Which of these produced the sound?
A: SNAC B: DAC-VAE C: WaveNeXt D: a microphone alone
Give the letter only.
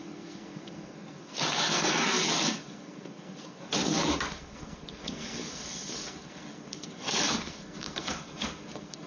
A